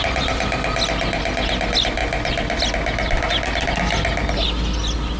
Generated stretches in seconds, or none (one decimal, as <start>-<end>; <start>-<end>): none